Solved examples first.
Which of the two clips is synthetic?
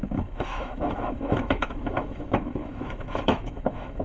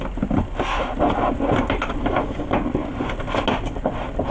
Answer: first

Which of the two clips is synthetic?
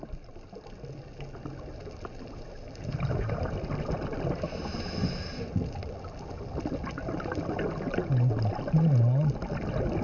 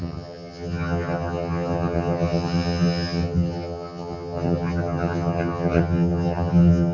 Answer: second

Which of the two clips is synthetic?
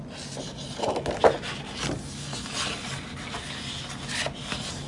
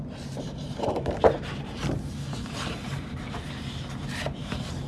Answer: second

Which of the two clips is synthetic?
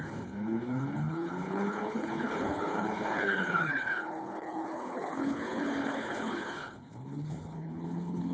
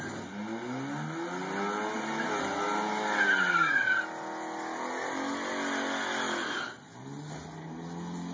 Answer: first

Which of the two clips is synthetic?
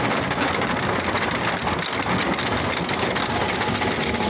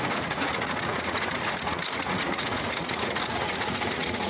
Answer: second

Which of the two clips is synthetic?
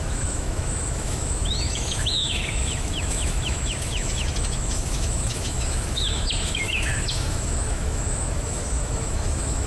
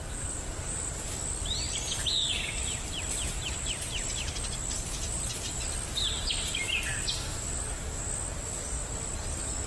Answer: first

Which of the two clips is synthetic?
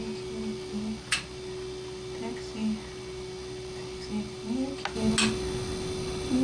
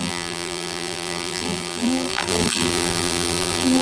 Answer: second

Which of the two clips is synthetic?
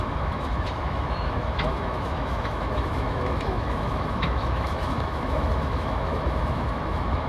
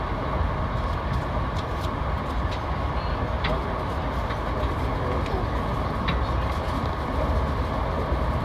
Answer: first